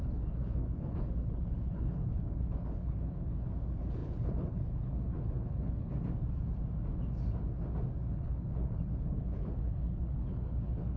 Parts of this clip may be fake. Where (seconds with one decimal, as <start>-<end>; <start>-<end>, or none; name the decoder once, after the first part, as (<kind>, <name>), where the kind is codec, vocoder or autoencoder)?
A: 0.0-5.9 (codec, HILCodec); 8.0-11.0